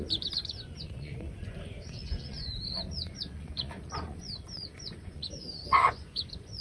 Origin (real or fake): fake